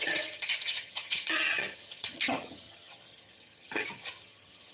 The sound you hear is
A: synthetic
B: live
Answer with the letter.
A